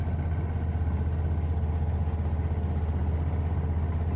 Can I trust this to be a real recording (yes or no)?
yes